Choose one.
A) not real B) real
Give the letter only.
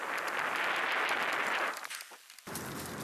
B